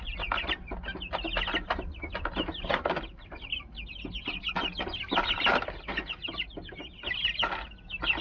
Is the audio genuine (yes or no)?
yes